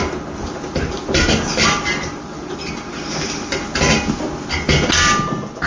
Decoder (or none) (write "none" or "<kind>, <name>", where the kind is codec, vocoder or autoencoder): none